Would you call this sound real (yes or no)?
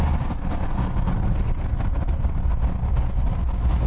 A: yes